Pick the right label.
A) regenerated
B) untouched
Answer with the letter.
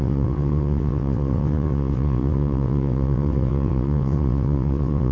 A